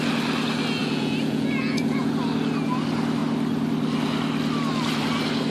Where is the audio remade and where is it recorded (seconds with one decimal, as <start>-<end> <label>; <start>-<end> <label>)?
0.0-0.8 recorded; 0.8-2.1 remade; 2.1-5.5 recorded